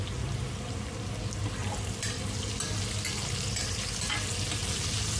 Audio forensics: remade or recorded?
recorded